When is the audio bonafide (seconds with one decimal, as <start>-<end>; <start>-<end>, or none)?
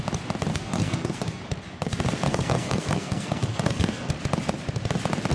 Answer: 0.0-0.5; 1.4-2.3; 4.1-5.3